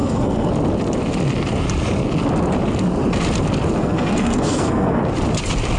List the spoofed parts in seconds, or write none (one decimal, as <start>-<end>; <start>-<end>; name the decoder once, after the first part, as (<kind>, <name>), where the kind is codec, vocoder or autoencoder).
0.0-0.5 (codec, SNAC); 3.8-5.0